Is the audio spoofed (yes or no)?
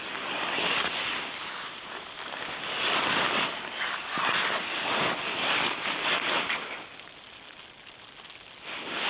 no